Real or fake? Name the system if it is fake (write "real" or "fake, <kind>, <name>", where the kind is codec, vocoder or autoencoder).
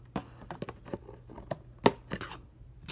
real